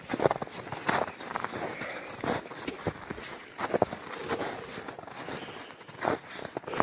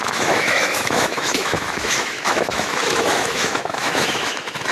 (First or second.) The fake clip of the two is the second